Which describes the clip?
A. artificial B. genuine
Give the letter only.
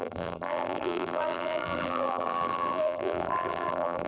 A